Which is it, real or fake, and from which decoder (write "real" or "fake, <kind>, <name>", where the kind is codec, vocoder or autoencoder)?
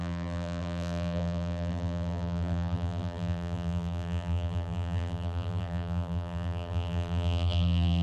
fake, vocoder, BigVGAN v2